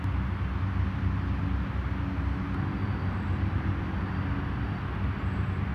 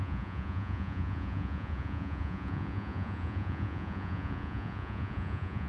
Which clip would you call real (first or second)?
first